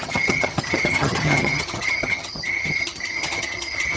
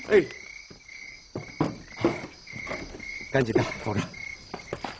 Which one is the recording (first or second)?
second